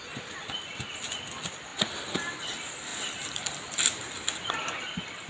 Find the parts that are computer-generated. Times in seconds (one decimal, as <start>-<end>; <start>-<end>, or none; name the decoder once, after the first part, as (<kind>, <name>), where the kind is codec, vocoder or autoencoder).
none